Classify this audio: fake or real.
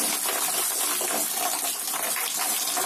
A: real